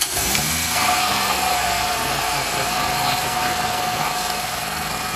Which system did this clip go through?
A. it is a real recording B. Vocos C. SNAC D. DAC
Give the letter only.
C